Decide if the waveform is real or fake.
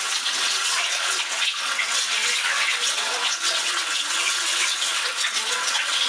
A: fake